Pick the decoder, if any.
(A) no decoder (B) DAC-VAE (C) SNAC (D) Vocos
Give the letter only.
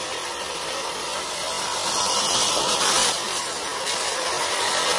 A